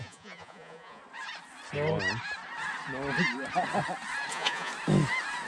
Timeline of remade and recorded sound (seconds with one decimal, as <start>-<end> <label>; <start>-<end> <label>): 0.0-1.0 remade; 1.0-4.3 recorded; 4.3-4.7 remade; 4.7-5.5 recorded